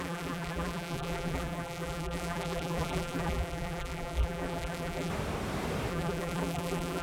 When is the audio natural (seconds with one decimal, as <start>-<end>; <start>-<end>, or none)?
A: 5.1-5.9